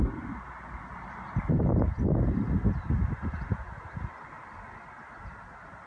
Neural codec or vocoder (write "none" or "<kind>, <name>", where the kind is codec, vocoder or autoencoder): none